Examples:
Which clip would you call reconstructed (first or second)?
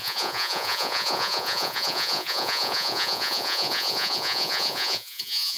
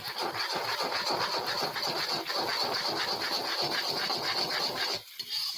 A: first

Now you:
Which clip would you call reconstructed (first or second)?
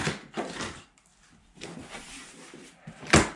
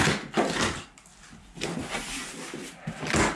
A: first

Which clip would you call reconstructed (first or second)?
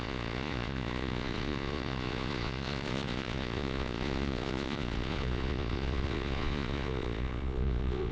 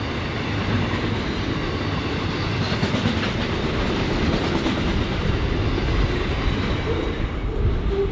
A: first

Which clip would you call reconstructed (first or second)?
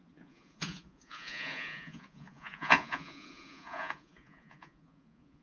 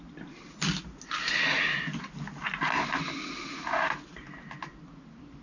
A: first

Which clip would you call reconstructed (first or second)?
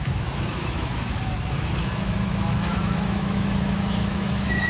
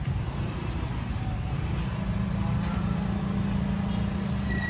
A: first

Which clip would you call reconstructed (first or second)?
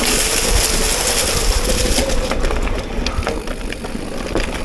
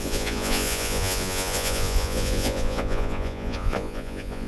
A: second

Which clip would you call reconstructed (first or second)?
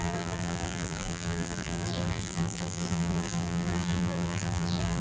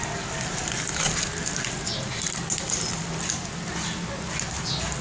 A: first